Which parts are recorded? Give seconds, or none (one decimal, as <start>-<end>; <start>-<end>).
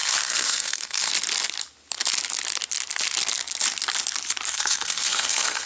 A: 1.1-4.5